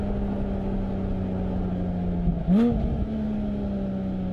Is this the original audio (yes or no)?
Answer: yes